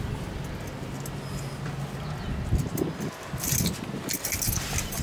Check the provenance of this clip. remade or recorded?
recorded